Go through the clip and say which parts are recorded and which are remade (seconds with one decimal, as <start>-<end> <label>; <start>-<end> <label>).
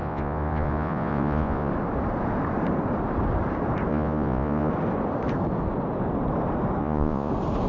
0.0-1.7 remade; 1.7-3.9 recorded; 3.9-4.7 remade; 4.7-6.8 recorded; 6.8-7.3 remade; 7.3-7.7 recorded